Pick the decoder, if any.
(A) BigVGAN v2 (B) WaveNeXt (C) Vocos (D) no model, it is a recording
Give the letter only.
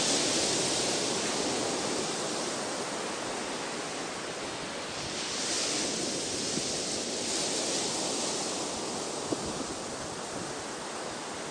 D